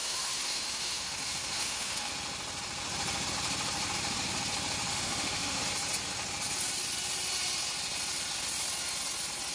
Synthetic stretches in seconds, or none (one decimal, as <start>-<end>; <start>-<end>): 0.0-2.1; 4.9-5.6